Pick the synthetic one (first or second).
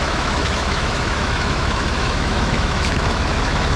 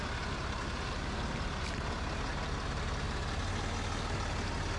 first